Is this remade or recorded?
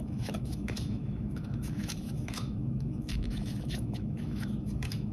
remade